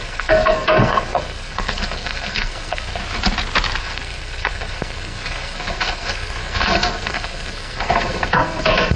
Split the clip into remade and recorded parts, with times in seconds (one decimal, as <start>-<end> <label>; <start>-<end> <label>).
0.0-3.0 remade; 3.0-3.8 recorded; 3.8-9.0 remade